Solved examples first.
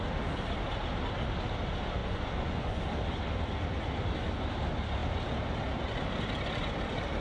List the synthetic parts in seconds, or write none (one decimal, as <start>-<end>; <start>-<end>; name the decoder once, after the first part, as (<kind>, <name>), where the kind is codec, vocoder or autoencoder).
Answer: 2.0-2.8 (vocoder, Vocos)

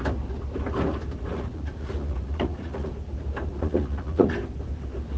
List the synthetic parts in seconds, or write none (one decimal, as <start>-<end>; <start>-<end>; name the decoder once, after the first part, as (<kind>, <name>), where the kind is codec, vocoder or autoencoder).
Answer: 1.3-2.9 (vocoder, Vocos); 3.5-4.3

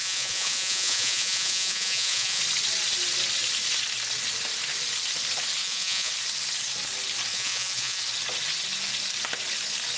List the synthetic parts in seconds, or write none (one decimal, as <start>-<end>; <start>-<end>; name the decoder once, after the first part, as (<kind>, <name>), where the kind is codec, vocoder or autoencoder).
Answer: 0.0-2.4 (vocoder, Vocos); 5.6-6.1; 7.3-8.0

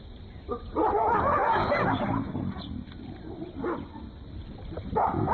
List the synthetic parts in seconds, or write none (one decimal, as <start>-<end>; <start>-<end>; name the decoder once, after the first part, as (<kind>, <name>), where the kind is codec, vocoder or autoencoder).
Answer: none